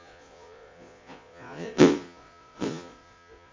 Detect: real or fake fake